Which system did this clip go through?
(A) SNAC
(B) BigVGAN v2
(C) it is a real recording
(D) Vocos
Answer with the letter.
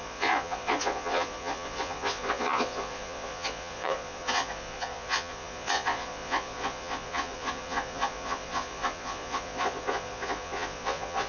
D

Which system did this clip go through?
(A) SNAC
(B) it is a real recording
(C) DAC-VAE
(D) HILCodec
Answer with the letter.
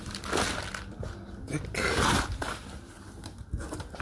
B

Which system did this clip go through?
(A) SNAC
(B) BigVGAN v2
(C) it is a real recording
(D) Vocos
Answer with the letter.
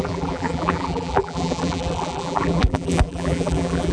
B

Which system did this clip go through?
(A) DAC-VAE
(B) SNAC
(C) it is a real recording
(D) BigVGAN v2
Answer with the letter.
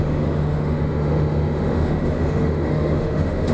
A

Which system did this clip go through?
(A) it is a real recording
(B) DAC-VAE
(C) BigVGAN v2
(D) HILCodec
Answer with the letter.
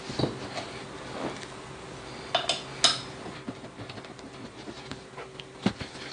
A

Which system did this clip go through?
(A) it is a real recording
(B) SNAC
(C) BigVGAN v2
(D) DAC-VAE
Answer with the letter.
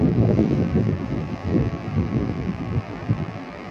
C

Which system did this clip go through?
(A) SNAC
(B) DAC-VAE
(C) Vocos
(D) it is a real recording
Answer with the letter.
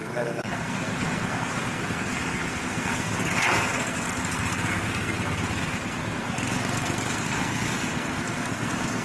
A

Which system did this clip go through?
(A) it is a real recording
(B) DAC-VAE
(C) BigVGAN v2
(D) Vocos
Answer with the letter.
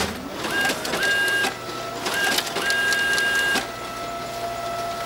A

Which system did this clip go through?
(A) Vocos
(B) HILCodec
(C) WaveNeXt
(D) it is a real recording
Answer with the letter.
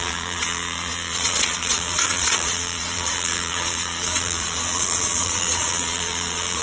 A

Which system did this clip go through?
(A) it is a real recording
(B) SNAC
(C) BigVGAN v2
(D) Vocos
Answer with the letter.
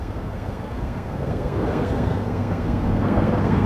B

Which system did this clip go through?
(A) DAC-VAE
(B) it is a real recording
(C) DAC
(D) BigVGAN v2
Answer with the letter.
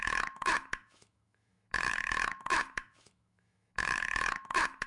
A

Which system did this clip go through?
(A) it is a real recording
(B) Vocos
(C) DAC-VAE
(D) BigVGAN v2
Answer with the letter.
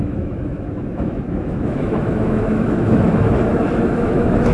C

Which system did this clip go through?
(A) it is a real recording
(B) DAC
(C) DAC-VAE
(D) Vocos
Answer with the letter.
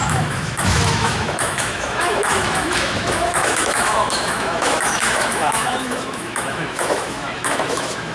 C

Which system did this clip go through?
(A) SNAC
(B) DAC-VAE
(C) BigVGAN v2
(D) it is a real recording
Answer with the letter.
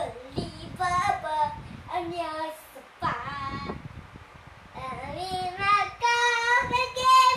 D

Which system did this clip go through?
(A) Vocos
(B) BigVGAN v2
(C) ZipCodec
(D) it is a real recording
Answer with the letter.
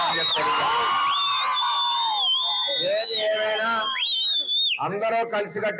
D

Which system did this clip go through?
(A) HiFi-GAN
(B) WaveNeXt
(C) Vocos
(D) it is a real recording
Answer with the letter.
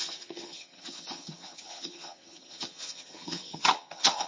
A